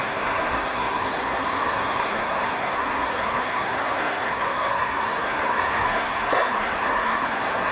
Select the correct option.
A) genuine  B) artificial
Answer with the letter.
B